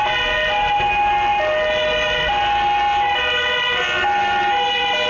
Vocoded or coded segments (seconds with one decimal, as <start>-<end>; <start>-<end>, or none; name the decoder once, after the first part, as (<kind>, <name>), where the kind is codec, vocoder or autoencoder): none